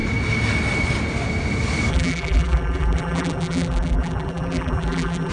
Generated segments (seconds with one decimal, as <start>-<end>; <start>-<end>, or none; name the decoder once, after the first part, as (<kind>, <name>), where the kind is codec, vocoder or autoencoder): 1.9-5.3 (vocoder, BigVGAN v2)